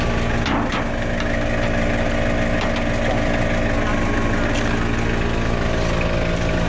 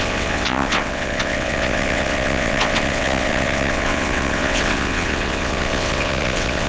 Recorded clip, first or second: first